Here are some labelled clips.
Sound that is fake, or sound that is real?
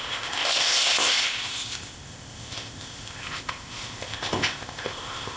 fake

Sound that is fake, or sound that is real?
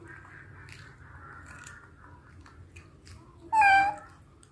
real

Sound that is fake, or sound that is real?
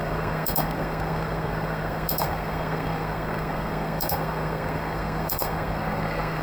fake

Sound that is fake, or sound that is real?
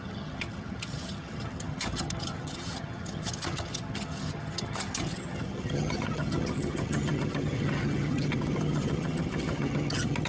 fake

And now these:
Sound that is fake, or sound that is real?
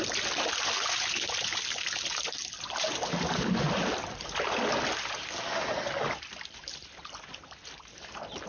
real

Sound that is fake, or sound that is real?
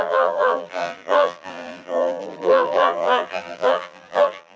fake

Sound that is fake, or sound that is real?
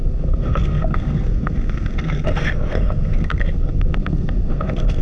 fake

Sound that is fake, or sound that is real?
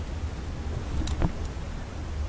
real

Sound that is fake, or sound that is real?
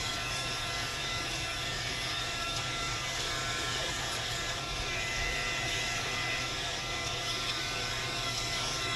fake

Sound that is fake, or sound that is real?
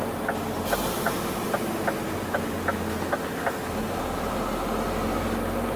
real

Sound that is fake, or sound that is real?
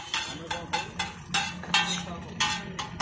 real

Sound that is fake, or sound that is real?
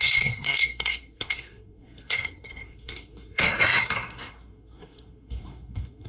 fake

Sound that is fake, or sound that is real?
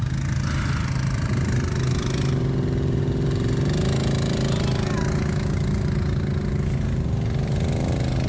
real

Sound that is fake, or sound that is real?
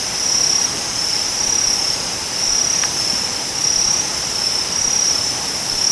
fake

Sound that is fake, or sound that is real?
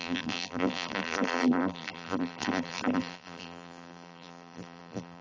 fake